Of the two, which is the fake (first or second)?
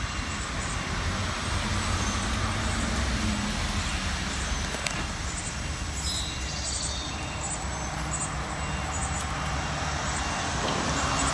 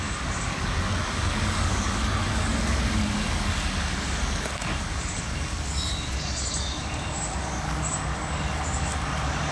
second